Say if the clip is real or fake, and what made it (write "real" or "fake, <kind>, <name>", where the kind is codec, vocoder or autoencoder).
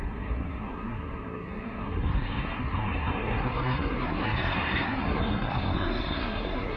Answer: fake, codec, SNAC